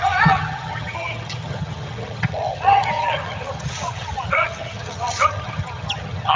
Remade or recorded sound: remade